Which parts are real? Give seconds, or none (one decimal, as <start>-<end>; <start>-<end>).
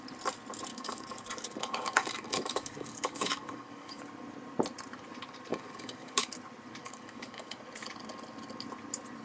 0.0-0.7; 4.0-5.5; 6.3-6.8; 7.5-9.2